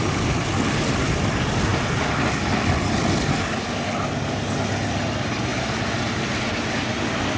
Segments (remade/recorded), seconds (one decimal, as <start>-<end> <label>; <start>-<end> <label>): 0.0-7.4 recorded